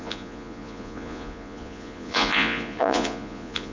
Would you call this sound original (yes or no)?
no